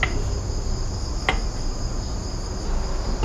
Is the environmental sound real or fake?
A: real